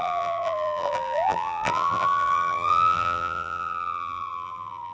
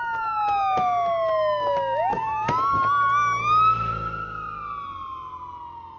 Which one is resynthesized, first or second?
first